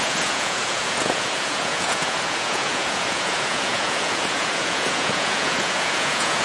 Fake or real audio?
fake